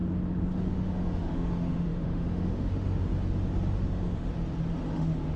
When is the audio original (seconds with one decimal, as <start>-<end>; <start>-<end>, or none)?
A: 0.0-0.6; 3.1-3.7; 4.3-4.9